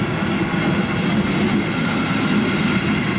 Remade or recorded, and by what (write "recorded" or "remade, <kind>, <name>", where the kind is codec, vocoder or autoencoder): recorded